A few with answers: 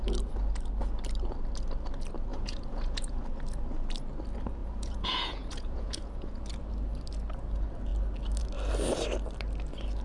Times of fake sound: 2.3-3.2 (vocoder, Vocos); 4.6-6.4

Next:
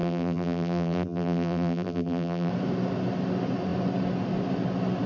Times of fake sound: 0.0-2.5 (vocoder, BigVGAN v2)